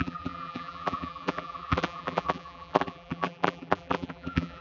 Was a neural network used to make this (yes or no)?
yes